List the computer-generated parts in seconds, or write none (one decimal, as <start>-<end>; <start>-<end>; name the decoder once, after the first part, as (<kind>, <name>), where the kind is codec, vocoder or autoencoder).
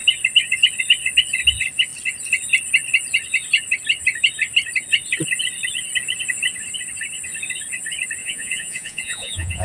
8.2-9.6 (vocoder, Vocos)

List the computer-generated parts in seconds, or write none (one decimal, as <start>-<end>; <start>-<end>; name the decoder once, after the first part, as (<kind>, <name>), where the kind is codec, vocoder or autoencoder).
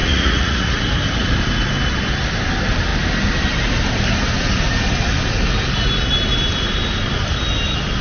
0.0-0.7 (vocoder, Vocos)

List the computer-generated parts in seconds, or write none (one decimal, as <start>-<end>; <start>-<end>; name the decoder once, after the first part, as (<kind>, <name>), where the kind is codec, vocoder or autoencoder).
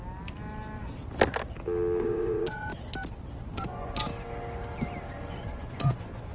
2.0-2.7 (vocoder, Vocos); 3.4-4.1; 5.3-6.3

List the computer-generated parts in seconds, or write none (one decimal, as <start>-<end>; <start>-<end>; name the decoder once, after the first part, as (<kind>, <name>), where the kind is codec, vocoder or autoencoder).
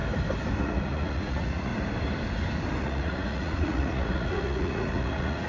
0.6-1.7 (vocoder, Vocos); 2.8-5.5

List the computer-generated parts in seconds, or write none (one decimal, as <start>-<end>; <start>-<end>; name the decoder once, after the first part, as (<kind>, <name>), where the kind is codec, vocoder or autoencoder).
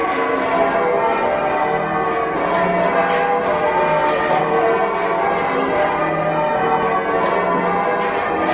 none